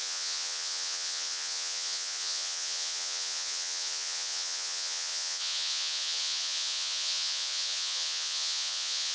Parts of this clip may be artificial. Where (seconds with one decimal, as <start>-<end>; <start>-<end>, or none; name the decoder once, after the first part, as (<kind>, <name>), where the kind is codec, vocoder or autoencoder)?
0.0-9.1 (vocoder, Vocos)